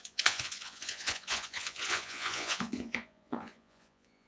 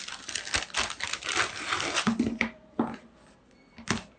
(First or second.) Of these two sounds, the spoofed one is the first